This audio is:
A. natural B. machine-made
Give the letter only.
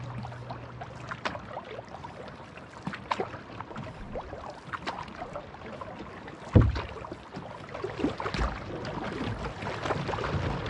A